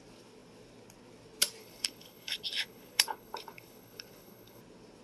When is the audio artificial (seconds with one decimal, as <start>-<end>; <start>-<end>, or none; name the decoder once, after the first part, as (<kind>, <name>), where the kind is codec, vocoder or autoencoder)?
1.6-4.6 (codec, HILCodec)